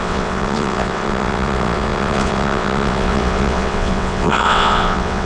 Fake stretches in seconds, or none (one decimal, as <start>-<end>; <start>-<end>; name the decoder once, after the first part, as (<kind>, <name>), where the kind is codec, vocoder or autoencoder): 0.0-5.3 (vocoder, WaveNeXt)